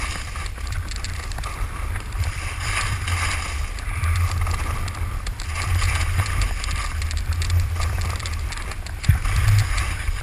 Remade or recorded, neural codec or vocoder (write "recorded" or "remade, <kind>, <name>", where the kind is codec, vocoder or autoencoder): remade, vocoder, BigVGAN v2